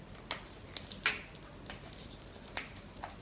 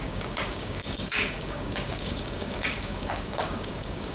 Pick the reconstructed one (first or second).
second